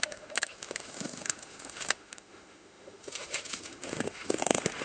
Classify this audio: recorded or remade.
remade